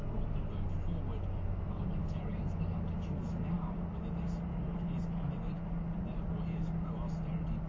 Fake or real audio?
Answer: real